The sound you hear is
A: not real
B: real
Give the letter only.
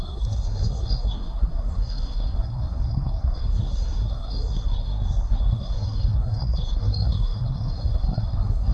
A